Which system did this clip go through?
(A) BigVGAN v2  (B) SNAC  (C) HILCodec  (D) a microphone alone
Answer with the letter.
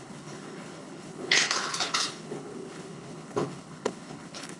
C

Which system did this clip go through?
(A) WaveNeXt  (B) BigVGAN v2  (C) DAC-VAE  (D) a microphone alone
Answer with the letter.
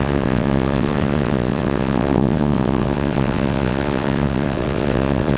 A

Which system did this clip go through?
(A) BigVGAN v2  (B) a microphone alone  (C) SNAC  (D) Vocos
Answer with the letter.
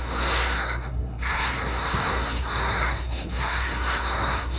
C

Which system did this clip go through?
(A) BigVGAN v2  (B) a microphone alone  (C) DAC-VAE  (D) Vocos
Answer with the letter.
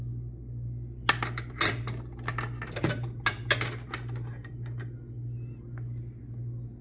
B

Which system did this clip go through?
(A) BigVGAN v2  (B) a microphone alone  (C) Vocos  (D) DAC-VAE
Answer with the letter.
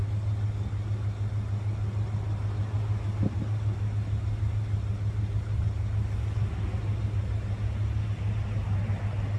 B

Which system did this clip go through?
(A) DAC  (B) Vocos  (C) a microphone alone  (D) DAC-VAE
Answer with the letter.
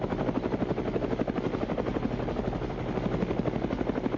C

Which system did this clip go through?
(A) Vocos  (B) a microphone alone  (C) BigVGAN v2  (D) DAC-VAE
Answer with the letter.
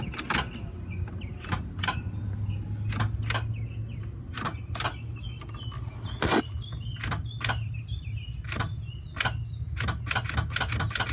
B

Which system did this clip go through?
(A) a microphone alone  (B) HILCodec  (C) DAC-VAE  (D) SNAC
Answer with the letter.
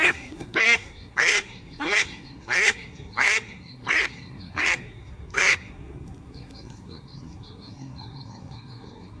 D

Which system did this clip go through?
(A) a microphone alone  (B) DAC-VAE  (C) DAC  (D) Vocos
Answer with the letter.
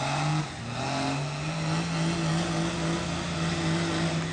A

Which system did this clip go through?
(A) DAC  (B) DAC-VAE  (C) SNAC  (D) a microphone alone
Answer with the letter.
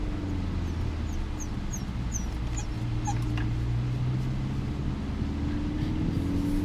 D